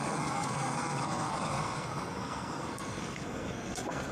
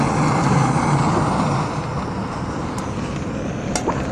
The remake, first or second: first